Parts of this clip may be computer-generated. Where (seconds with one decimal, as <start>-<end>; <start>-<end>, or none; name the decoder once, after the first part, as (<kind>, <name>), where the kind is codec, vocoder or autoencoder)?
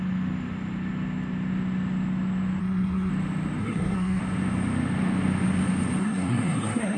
2.6-3.1 (codec, SNAC); 3.6-4.2; 6.0-7.0